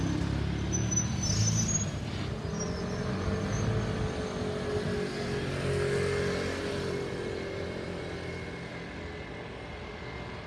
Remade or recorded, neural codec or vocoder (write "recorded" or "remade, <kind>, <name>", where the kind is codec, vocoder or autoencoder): recorded